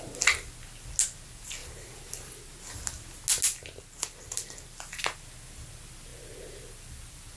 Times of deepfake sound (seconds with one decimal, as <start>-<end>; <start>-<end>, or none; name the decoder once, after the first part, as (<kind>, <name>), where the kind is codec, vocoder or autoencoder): 1.6-2.4 (vocoder, BigVGAN v2); 6.1-7.4